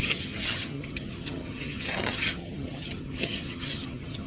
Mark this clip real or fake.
fake